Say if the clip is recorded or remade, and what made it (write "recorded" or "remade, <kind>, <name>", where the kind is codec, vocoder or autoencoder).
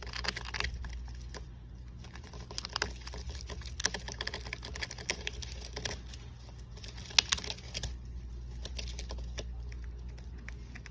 recorded